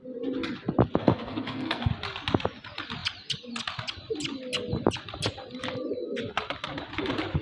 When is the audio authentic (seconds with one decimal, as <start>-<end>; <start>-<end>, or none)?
0.0-1.0; 1.9-7.4